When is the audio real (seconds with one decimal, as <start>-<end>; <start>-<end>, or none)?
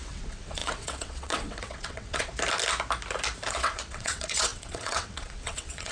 2.3-3.5